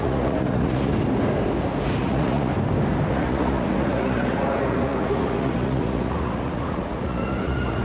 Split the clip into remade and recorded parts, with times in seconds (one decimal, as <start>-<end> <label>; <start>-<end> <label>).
0.0-0.9 remade; 0.9-2.0 recorded; 2.0-2.5 remade; 2.5-3.1 recorded; 3.1-7.8 remade